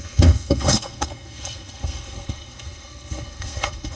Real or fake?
fake